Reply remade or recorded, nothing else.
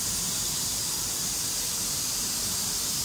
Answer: remade